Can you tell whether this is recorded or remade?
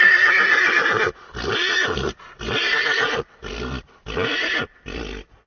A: recorded